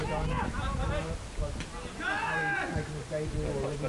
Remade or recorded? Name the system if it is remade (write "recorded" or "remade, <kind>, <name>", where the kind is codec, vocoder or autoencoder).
recorded